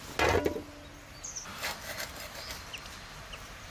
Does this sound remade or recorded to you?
recorded